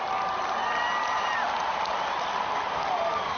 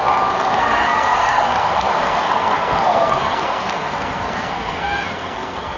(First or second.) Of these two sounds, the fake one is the second